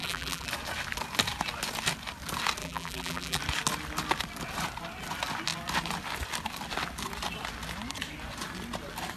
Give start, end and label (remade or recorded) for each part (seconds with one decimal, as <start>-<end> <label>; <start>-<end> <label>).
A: 0.0-0.5 remade; 0.5-2.6 recorded; 2.6-3.4 remade; 3.4-9.2 recorded